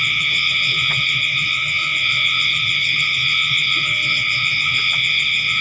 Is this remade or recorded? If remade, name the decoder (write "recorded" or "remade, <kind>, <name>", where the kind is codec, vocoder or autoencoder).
remade, vocoder, WaveNeXt